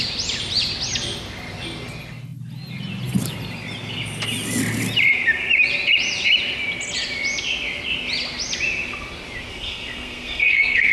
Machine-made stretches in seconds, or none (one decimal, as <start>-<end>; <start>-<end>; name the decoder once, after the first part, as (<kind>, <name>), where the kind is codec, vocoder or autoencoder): 9.5-10.9 (codec, SNAC)